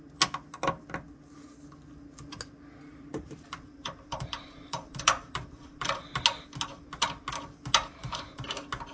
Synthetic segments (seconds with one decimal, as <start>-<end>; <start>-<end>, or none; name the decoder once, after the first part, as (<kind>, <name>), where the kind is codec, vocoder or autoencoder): 2.9-6.0 (vocoder, BigVGAN v2); 8.0-8.5